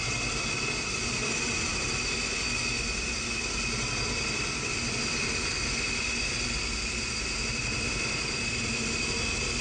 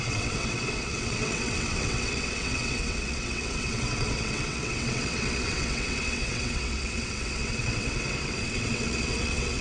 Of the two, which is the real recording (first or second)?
first